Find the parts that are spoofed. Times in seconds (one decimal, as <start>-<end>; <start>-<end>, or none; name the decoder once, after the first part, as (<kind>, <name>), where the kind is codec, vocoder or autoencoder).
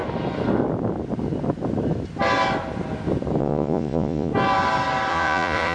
3.4-4.3 (vocoder, Vocos); 5.1-5.7